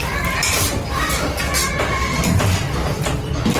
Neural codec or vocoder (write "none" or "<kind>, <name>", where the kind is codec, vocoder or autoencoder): none